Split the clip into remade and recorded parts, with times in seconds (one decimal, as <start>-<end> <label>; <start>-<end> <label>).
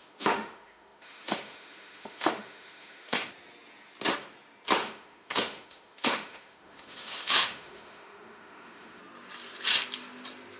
0.0-3.3 remade; 3.3-4.8 recorded; 4.8-9.0 remade; 9.0-10.6 recorded